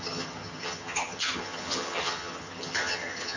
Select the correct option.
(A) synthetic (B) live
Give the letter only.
A